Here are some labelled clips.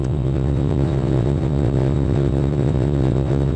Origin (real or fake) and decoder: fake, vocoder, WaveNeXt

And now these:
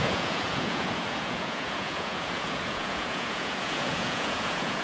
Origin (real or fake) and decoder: fake, vocoder, Vocos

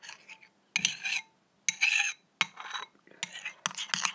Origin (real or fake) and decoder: real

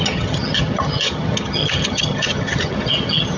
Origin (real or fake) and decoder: fake, vocoder, HiFi-GAN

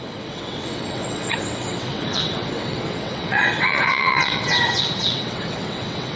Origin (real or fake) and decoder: fake, vocoder, WaveNeXt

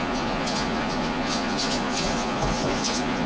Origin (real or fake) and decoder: fake, vocoder, Vocos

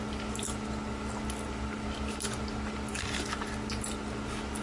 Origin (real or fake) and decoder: real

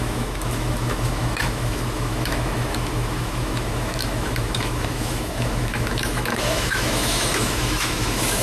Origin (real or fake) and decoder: fake, autoencoder, DAC-VAE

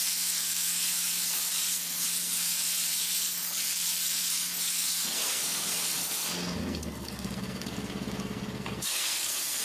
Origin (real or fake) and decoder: fake, codec, SNAC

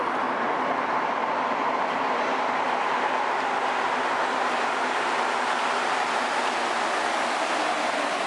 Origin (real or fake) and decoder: real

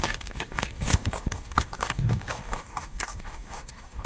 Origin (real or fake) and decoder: fake, codec, DAC